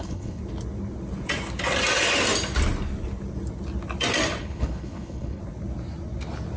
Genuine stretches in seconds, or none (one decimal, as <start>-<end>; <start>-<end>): 0.4-4.4; 5.4-6.6